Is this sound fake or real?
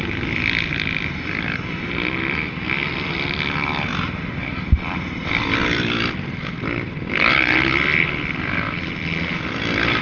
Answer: real